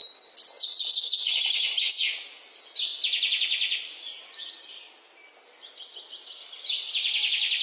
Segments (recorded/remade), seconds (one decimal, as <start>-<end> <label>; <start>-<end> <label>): 0.0-7.6 recorded